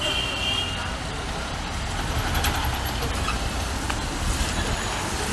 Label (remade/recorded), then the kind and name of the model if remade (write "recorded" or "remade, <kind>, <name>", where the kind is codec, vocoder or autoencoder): recorded